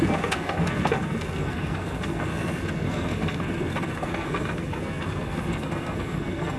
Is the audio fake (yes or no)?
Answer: yes